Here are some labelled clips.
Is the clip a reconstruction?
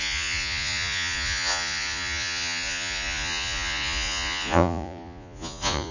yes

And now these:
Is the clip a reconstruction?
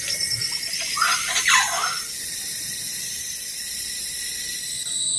yes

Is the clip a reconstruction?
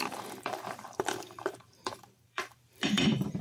yes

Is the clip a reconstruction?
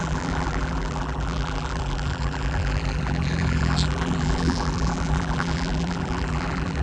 yes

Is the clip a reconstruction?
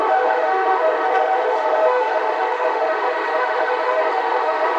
yes